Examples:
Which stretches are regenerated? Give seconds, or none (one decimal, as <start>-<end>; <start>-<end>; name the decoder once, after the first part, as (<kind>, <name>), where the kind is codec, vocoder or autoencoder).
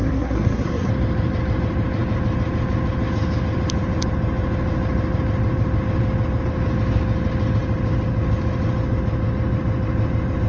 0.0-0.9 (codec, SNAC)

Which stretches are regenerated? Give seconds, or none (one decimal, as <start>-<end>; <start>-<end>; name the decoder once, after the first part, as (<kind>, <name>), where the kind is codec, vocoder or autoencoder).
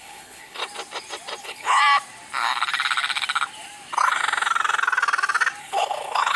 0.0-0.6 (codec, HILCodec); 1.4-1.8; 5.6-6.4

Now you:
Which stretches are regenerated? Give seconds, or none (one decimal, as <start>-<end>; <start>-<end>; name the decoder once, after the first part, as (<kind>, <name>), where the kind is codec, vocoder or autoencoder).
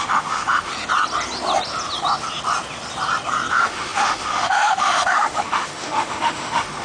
0.0-0.7 (autoencoder, DAC-VAE); 3.5-6.8